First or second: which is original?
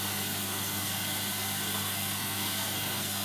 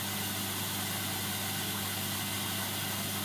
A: second